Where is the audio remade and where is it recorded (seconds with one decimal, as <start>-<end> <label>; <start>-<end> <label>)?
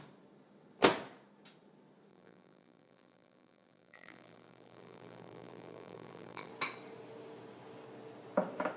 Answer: 0.0-2.1 recorded; 2.1-6.5 remade; 6.5-8.8 recorded